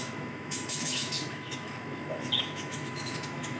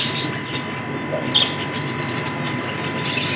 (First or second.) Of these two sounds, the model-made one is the first